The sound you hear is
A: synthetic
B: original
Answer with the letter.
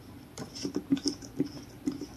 B